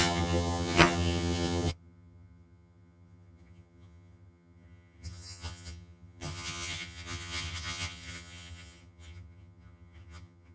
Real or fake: fake